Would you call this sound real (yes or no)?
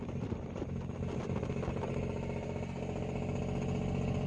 yes